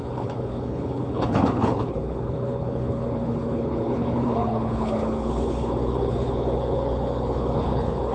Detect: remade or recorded remade